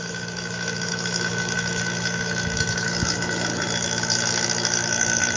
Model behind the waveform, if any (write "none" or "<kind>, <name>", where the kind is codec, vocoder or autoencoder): autoencoder, DAC-VAE